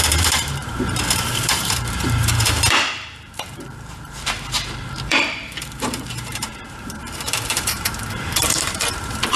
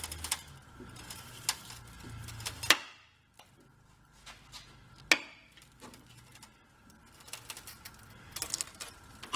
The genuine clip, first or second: second